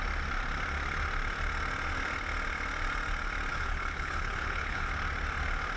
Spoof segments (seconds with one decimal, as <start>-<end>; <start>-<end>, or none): 3.5-4.9